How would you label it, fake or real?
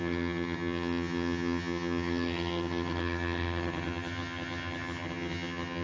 fake